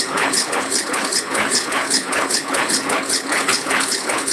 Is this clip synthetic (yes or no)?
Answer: yes